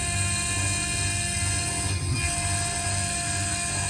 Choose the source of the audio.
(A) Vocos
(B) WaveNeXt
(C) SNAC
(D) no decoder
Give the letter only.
D